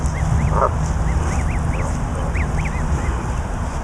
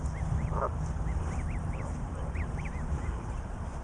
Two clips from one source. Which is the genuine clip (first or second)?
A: first